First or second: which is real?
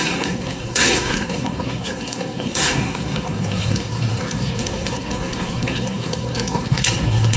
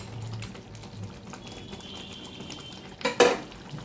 second